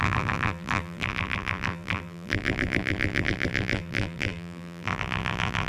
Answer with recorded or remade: remade